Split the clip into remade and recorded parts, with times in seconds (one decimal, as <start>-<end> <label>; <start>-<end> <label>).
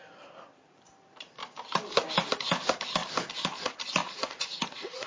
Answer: 0.0-4.0 recorded; 4.0-5.1 remade